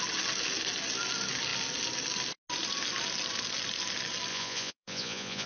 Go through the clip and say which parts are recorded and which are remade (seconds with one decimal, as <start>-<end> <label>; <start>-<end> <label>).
0.0-4.3 recorded; 4.3-5.5 remade